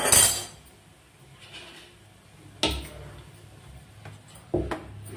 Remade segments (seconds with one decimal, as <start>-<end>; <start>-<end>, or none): none